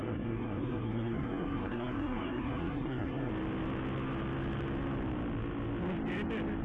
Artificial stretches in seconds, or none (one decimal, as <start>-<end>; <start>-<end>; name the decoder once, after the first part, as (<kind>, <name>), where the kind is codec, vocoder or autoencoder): 0.0-3.3 (codec, SNAC)